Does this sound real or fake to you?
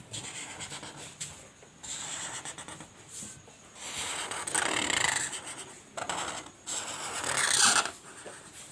real